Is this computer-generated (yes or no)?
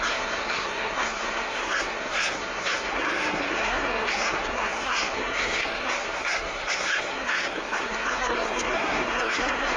yes